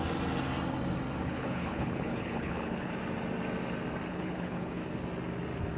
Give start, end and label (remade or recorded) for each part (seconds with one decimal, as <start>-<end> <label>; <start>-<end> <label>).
0.0-1.2 recorded; 1.2-2.9 remade; 2.9-4.1 recorded; 4.1-4.8 remade; 4.8-5.8 recorded